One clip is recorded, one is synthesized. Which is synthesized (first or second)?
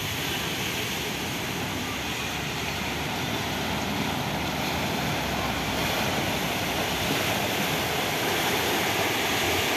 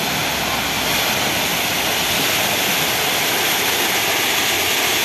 first